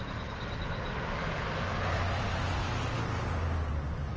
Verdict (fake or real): real